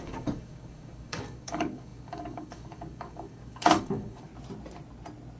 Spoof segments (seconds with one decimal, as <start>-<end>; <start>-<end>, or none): 0.0-4.3